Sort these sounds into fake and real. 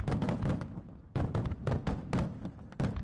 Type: real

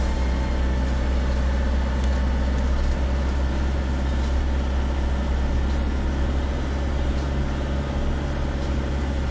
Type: real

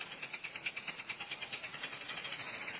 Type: fake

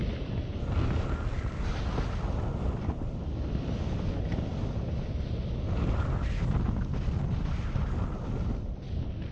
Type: real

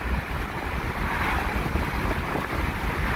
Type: real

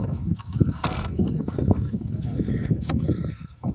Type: fake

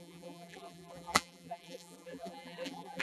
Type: fake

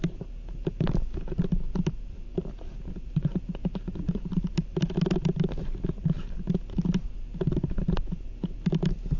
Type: fake